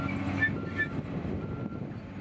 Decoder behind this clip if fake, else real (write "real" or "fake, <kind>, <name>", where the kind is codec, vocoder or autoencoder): real